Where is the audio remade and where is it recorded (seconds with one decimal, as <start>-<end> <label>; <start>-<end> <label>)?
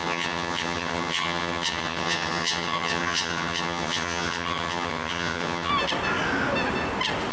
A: 0.0-5.7 remade; 5.7-7.3 recorded